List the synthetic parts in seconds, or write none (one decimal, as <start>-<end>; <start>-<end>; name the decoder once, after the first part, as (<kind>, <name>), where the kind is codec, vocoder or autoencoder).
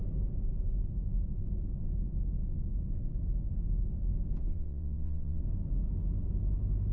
4.5-5.4 (vocoder, WaveNeXt)